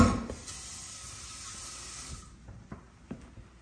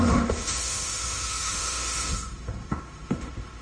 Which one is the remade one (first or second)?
second